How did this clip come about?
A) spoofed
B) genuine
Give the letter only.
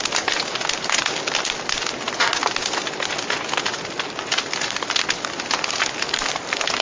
B